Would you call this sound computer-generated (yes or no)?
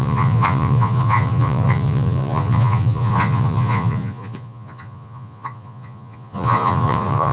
yes